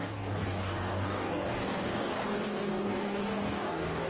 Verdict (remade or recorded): remade